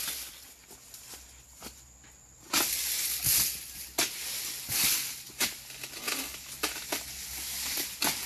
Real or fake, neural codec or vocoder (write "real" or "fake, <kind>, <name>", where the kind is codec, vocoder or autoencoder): real